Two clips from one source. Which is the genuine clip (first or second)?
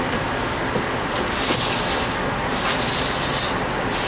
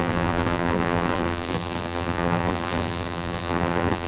first